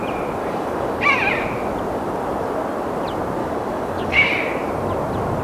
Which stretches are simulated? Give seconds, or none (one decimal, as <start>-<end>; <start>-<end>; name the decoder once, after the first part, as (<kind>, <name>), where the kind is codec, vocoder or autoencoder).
0.4-1.0 (codec, DAC); 3.4-4.3